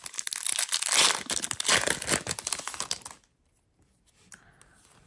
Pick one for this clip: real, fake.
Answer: real